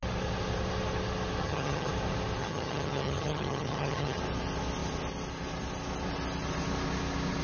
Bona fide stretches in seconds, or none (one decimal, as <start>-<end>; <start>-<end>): 0.0-1.4; 1.9-2.4; 4.2-7.4